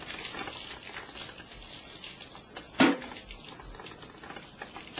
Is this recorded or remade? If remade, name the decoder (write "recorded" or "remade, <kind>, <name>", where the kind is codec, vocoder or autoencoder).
recorded